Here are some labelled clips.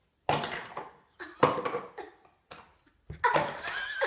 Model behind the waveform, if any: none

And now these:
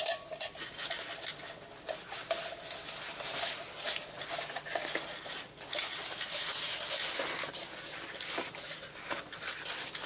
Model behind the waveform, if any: none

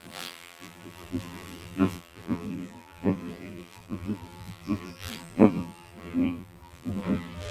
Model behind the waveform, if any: vocoder, BigVGAN v2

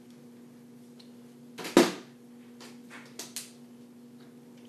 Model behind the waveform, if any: none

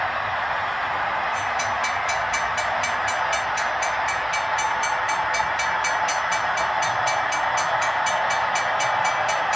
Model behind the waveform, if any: none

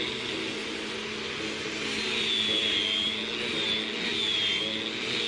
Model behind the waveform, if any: none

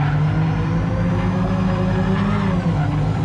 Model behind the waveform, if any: none